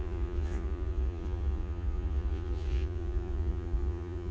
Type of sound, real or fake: fake